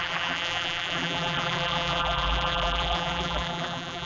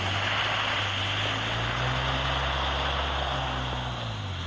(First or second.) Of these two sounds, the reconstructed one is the first